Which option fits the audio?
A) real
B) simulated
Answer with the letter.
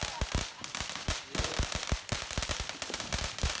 B